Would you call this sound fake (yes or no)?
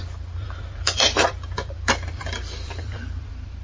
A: yes